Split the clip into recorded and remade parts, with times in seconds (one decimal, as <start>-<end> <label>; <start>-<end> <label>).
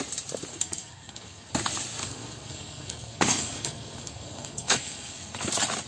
0.0-0.5 recorded; 0.5-1.5 remade; 1.5-2.0 recorded; 2.0-5.5 remade; 5.5-5.9 recorded